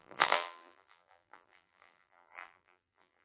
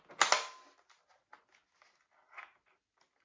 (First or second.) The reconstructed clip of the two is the first